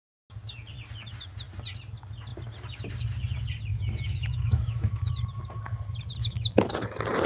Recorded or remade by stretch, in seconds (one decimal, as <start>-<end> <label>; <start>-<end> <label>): 0.0-3.7 recorded; 3.7-5.1 remade; 5.1-6.2 recorded; 6.2-6.7 remade; 6.7-7.3 recorded